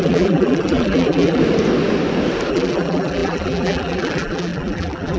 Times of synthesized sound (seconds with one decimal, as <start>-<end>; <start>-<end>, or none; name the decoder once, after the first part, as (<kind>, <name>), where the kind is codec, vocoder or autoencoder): 0.0-1.4 (vocoder, BigVGAN v2); 2.5-5.2